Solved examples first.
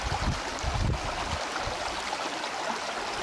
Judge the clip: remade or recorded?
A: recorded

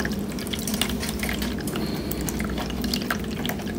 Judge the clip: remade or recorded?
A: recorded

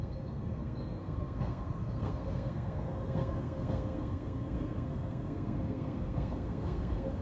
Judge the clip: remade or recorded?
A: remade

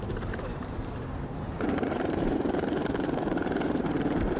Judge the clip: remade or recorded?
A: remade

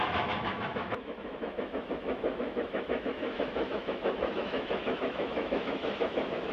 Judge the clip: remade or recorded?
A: remade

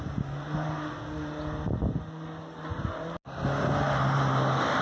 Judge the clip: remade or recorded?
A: recorded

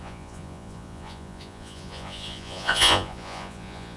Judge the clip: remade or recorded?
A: remade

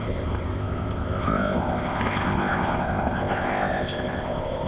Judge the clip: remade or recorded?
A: remade